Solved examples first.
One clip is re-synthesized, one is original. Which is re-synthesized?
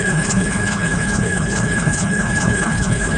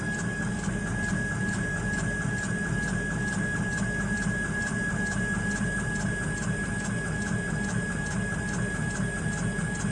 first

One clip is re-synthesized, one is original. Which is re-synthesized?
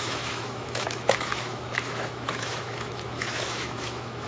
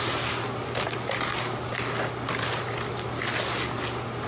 first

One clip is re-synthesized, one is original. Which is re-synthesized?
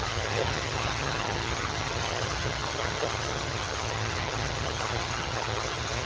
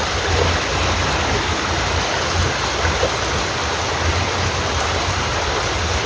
first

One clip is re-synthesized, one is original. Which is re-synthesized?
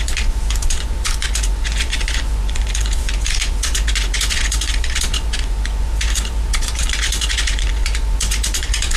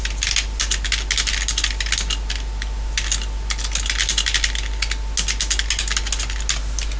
first